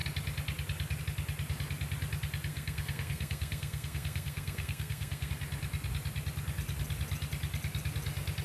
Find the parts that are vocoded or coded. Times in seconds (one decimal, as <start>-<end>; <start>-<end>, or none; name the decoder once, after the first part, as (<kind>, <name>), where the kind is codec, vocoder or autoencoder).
2.5-5.3 (codec, SNAC)